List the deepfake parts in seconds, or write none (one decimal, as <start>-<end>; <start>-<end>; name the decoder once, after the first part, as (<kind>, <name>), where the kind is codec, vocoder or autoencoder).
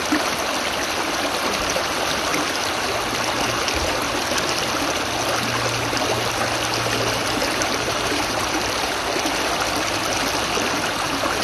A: 7.4-8.9 (vocoder, BigVGAN v2)